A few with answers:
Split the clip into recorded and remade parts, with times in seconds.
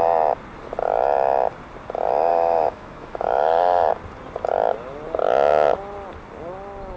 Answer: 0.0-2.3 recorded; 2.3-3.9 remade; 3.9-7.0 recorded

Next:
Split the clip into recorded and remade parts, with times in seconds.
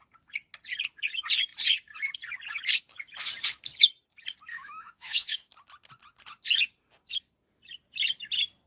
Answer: 0.0-4.5 recorded; 4.5-5.5 remade; 5.5-8.7 recorded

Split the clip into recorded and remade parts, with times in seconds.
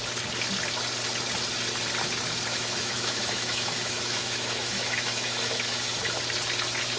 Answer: 0.0-2.5 recorded; 2.5-6.2 remade; 6.2-7.0 recorded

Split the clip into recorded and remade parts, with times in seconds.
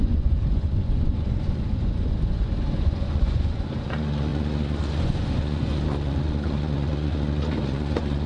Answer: 0.0-8.3 remade